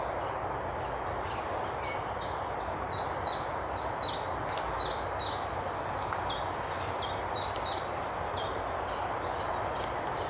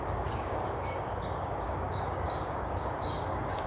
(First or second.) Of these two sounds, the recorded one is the first